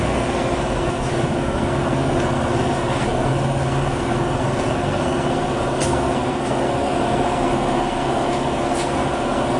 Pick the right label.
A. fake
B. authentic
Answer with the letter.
A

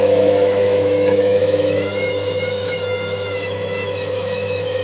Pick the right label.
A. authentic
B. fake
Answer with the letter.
B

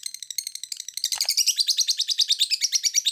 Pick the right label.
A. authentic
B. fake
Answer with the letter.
A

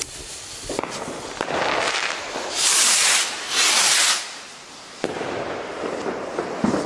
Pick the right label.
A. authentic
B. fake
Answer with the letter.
A